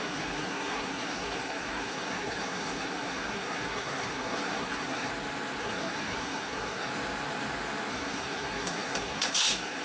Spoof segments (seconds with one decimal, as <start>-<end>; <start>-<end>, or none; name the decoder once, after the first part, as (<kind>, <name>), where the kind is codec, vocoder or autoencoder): 0.0-5.1 (codec, SNAC); 5.6-6.9; 7.9-9.8